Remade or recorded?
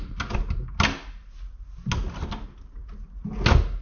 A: recorded